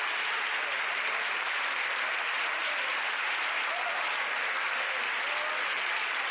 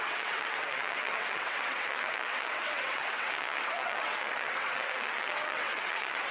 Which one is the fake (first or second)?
second